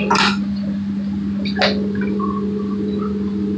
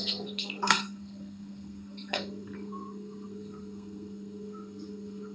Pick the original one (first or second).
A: first